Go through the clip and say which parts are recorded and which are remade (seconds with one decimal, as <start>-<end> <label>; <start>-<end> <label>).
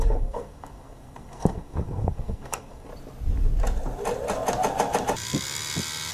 0.0-2.9 remade; 2.9-6.1 recorded